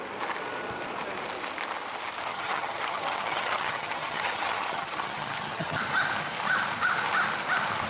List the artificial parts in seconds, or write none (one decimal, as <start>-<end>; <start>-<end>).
2.3-5.8